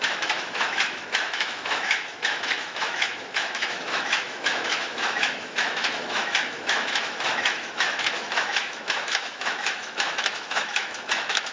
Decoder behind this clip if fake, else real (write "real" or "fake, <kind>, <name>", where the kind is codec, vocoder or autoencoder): fake, autoencoder, DAC-VAE